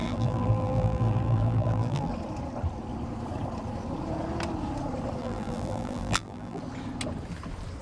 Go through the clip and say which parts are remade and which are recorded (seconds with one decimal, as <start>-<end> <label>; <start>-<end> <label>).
0.0-2.1 remade; 2.1-5.2 recorded; 5.2-6.6 remade; 6.6-7.8 recorded